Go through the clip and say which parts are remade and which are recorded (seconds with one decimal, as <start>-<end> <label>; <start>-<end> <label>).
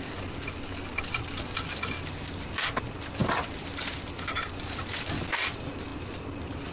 0.0-6.7 recorded